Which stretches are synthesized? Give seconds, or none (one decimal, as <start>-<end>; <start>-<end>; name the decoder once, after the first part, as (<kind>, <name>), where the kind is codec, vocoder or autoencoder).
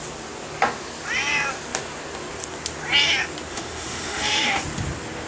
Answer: 3.5-4.6 (autoencoder, DAC-VAE)